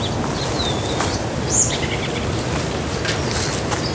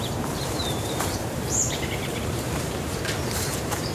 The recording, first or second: first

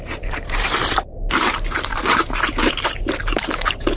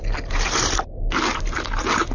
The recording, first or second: second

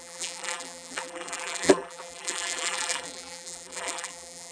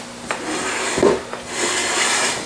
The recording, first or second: second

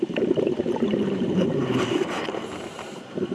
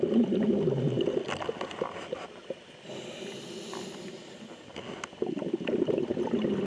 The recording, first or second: second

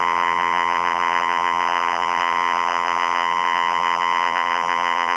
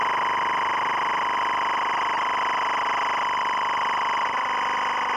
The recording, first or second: second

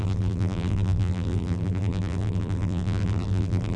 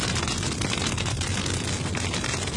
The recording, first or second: second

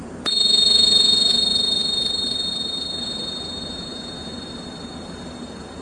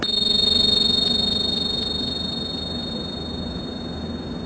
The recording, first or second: second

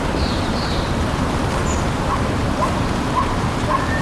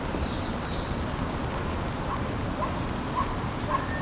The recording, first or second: second